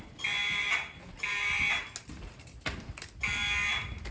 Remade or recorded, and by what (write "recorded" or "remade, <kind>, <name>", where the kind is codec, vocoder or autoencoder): recorded